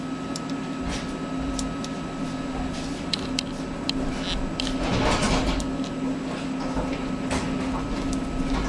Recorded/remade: recorded